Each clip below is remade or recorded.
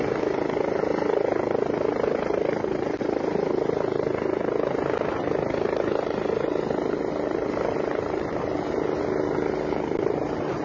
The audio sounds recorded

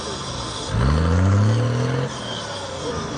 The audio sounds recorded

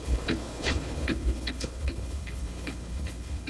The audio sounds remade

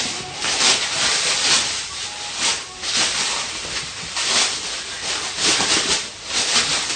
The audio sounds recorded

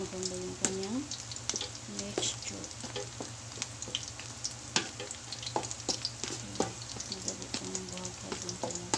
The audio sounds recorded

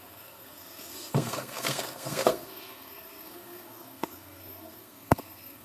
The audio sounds remade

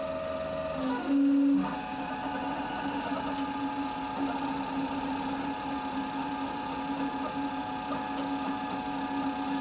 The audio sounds recorded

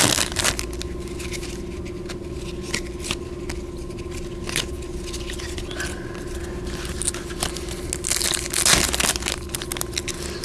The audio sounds recorded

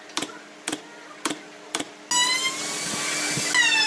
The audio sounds recorded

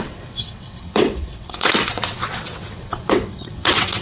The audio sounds remade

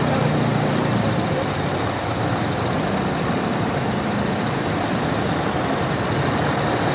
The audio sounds recorded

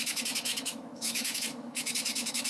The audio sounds remade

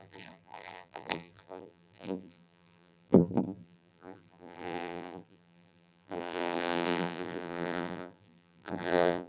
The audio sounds remade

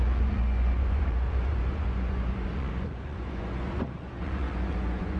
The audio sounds remade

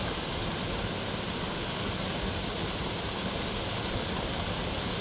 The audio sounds recorded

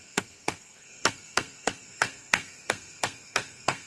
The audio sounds remade